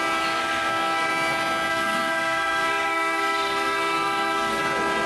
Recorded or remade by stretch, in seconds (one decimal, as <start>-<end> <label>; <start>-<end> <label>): 0.0-0.4 recorded; 0.4-1.1 remade; 1.1-1.7 recorded; 1.7-4.6 remade; 4.6-5.1 recorded